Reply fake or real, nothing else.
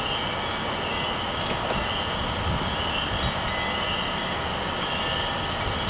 real